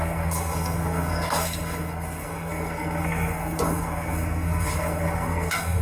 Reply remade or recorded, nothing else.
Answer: remade